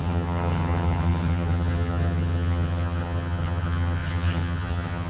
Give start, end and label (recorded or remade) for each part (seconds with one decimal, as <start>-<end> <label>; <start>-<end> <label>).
0.0-5.1 remade